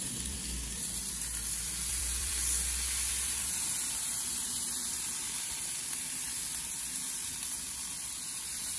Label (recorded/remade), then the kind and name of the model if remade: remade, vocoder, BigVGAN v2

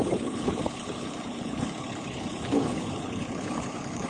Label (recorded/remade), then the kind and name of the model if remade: remade, codec, HILCodec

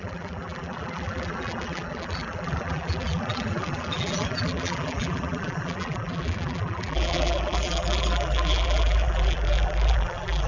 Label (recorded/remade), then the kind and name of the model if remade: remade, vocoder, BigVGAN v2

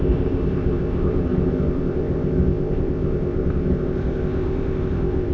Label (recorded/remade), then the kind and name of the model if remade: remade, codec, ZipCodec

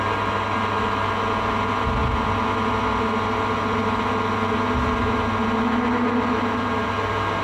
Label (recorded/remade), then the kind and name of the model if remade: recorded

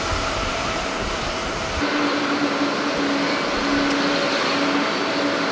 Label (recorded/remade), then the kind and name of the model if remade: recorded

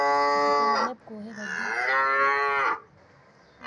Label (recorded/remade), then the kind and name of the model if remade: recorded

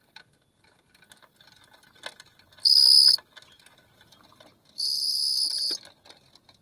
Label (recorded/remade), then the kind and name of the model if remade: recorded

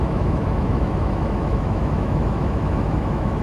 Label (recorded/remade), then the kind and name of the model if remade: remade, autoencoder, DAC-VAE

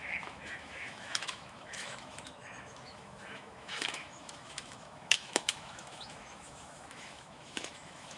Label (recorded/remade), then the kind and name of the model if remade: remade, autoencoder, DAC-VAE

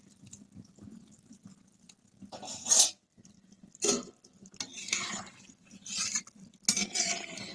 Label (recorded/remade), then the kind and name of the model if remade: recorded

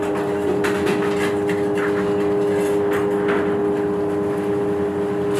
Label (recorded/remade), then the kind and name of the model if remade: recorded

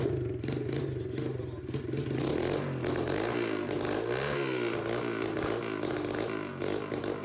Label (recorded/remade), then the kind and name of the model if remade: recorded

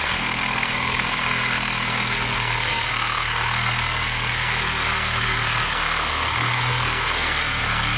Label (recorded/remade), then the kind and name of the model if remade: remade, codec, SNAC